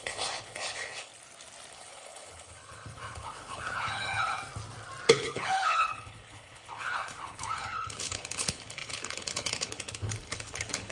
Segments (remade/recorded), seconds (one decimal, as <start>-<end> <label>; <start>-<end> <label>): 0.0-1.1 remade; 1.1-1.7 recorded; 1.7-4.4 remade; 4.4-5.1 recorded; 5.1-10.9 remade